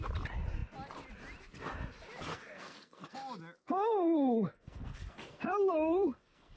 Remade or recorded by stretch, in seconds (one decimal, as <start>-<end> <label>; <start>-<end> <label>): 0.0-2.3 recorded; 2.3-3.2 remade; 3.2-3.6 recorded; 3.6-6.6 remade